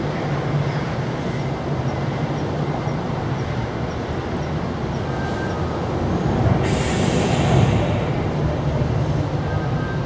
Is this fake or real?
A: real